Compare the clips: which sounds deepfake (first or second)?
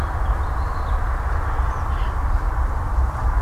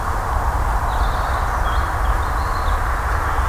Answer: first